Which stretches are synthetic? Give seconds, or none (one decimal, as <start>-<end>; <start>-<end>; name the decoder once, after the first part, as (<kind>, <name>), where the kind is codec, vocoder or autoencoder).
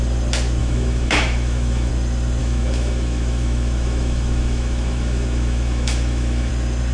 0.6-1.9 (autoencoder, DAC-VAE); 2.4-6.5